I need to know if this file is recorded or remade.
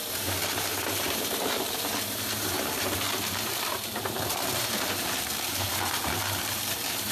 remade